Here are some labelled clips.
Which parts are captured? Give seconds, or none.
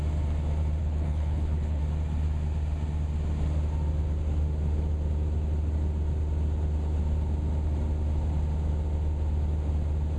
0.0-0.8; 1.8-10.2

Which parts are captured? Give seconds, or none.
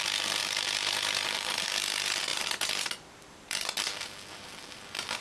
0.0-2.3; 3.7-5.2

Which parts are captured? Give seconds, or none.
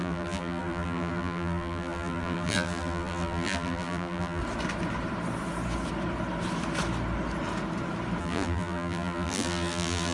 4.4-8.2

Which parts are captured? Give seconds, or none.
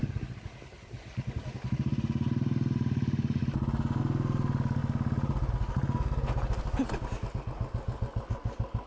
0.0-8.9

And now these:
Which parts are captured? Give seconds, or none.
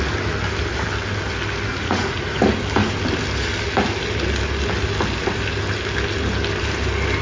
0.0-1.7; 2.4-7.2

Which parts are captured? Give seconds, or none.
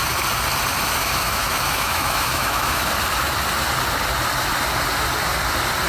0.0-1.0; 2.9-5.9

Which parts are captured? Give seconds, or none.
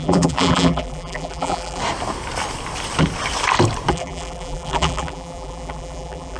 1.8-3.9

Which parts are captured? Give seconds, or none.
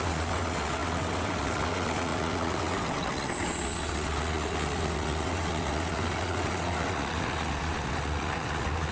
none